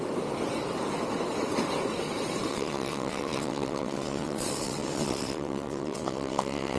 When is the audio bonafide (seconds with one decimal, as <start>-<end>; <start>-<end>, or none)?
0.0-2.5